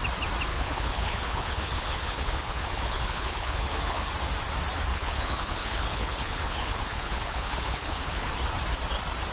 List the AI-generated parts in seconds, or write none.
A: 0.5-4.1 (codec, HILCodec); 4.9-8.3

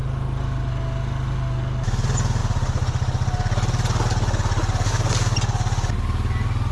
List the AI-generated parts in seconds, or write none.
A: 0.0-0.7 (vocoder, BigVGAN v2)

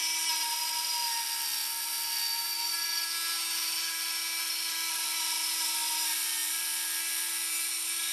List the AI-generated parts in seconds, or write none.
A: 4.4-8.1 (vocoder, BigVGAN v2)

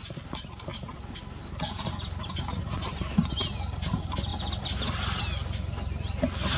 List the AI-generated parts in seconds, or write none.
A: none